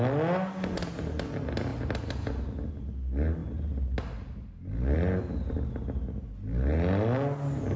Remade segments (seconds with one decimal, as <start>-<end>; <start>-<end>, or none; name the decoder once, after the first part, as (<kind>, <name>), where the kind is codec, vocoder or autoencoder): none